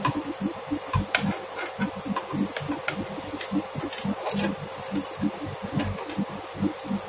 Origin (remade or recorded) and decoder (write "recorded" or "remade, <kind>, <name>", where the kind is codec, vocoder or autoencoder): recorded